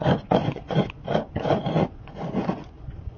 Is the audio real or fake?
fake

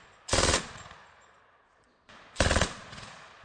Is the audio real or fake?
fake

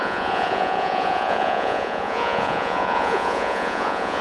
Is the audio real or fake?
fake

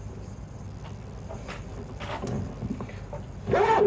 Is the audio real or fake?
real